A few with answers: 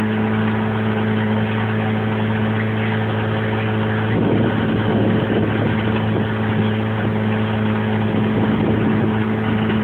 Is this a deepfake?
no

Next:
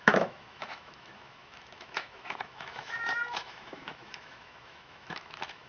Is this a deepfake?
yes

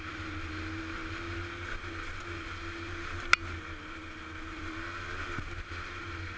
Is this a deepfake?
no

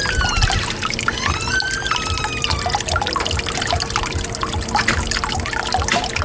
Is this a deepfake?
no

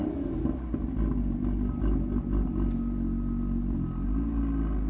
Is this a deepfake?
no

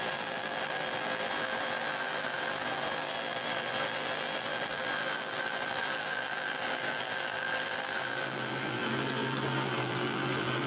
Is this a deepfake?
yes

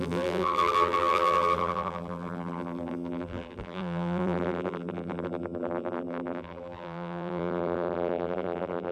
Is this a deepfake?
yes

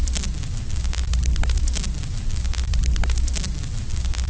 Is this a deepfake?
yes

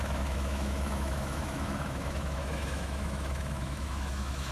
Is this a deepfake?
yes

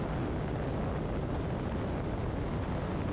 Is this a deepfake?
no